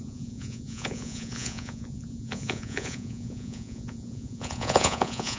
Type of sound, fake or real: fake